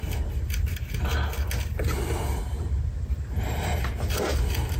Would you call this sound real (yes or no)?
yes